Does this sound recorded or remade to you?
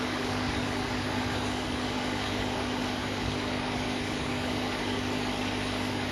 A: remade